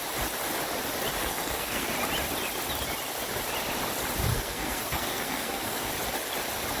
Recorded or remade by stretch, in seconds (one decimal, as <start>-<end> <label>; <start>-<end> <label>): 0.0-1.2 recorded; 1.2-1.9 remade; 1.9-4.3 recorded; 4.3-5.9 remade; 5.9-6.8 recorded